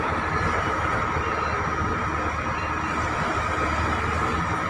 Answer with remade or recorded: recorded